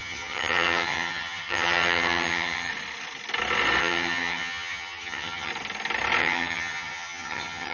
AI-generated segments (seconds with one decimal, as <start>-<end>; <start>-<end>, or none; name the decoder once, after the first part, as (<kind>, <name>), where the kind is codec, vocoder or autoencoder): 0.0-2.7 (vocoder, HiFi-GAN); 3.8-5.5; 6.2-7.7